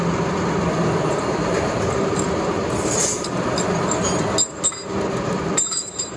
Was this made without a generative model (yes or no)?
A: yes